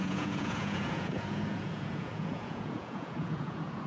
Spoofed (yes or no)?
yes